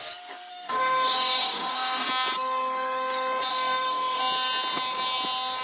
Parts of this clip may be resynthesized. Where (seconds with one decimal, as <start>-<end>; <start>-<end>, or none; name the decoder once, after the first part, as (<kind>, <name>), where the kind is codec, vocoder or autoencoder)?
0.5-2.1 (autoencoder, DAC-VAE); 3.5-4.2

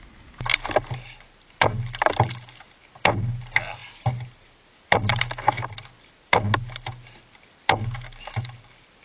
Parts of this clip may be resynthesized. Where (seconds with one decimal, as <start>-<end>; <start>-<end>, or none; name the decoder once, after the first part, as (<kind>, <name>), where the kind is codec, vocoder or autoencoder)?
none

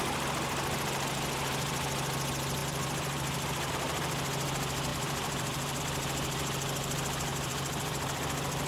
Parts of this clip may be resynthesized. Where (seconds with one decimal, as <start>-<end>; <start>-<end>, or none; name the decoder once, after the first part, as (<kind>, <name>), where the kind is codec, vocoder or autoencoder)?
2.6-3.7 (vocoder, BigVGAN v2); 4.9-5.8; 7.3-8.2

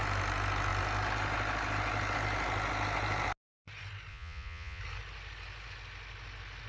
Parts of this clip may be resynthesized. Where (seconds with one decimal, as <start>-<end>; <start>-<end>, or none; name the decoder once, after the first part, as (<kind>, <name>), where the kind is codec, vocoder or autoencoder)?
4.1-4.8 (vocoder, Vocos)

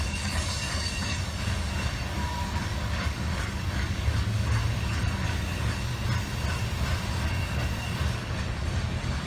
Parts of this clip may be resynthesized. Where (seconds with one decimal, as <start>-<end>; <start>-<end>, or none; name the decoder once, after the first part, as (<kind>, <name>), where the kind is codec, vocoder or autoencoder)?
0.0-5.9 (codec, DAC); 7.1-9.3